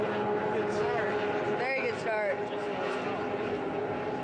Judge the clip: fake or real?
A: real